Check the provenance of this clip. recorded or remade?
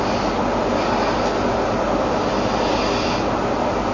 recorded